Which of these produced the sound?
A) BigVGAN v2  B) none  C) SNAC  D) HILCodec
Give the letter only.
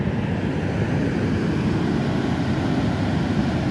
B